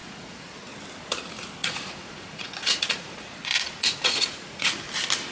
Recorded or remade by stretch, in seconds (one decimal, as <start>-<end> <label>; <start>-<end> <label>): 0.0-0.7 remade; 0.7-1.6 recorded; 1.6-4.8 remade; 4.8-5.3 recorded